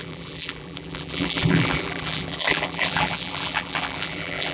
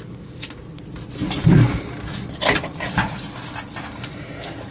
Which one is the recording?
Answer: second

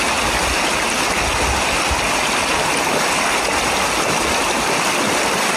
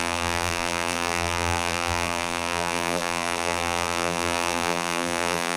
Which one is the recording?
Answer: first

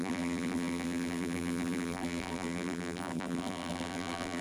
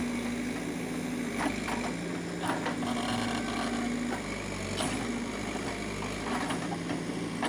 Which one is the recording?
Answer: second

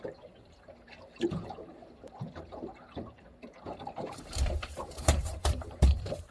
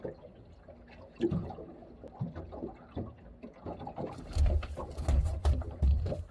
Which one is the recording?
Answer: second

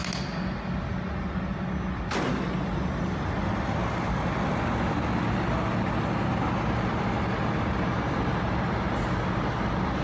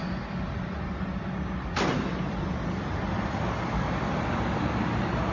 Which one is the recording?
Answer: first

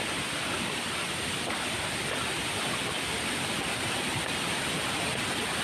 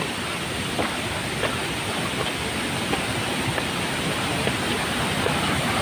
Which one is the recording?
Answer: second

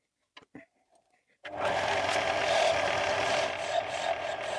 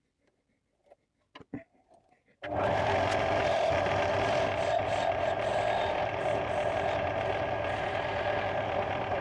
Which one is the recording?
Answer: second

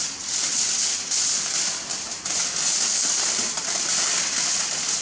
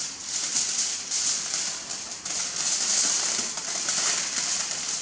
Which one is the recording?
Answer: first